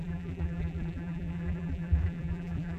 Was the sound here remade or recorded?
remade